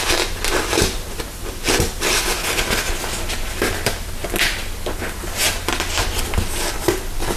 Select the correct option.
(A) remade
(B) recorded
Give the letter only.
B